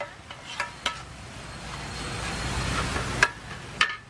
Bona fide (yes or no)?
yes